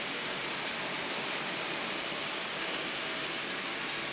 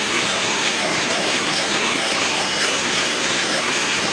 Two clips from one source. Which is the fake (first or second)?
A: second